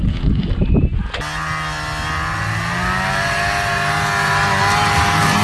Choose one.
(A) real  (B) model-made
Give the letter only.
A